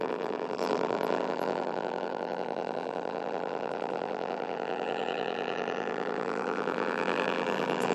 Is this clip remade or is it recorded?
remade